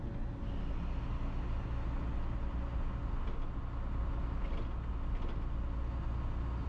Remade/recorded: recorded